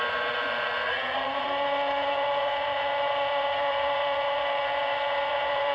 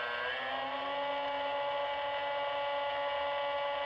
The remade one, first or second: first